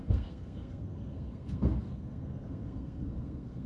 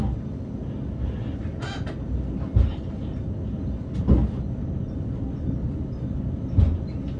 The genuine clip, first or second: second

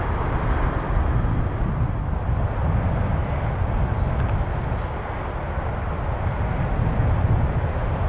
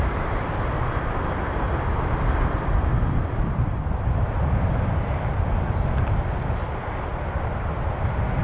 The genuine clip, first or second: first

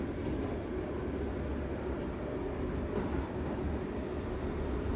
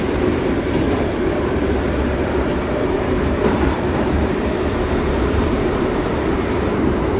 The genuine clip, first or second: first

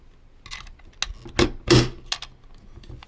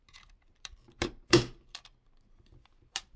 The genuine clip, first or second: first